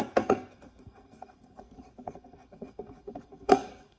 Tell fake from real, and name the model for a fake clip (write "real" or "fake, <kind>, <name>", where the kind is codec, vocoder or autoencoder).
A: fake, codec, SNAC